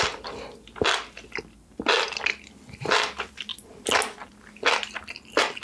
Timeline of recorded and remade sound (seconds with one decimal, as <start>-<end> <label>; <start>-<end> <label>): 0.0-5.6 recorded